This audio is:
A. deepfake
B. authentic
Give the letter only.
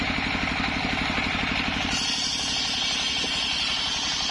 B